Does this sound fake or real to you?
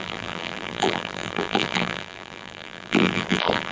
fake